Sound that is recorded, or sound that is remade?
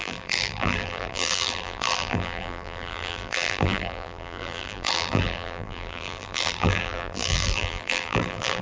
remade